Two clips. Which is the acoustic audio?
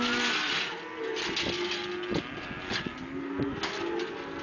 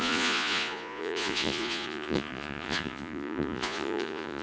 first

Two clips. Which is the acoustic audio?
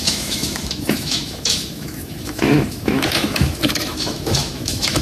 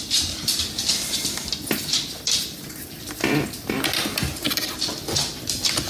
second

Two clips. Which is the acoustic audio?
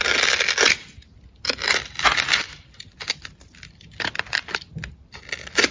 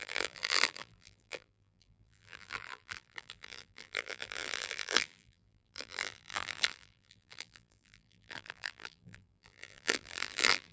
first